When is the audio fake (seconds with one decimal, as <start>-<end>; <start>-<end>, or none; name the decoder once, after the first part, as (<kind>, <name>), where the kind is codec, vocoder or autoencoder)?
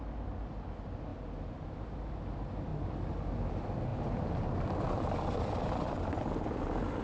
none